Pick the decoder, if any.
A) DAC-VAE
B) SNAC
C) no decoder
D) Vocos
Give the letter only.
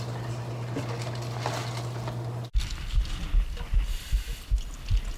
C